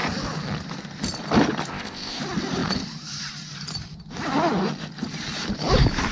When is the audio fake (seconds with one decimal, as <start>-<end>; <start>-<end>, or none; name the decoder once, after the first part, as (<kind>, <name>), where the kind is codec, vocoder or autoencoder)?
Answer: 1.7-2.2 (codec, ZipCodec)